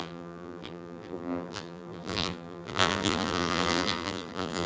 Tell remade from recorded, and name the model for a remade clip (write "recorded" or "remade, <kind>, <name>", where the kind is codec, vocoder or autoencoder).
remade, vocoder, BigVGAN v2